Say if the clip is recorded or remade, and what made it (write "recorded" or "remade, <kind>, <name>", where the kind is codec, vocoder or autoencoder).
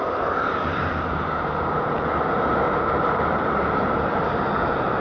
remade, vocoder, BigVGAN v2